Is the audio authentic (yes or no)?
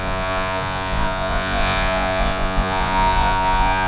no